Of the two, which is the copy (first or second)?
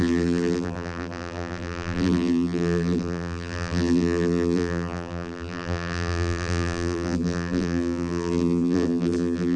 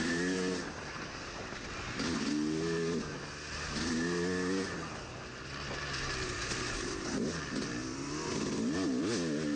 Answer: first